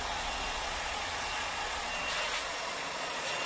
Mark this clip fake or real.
fake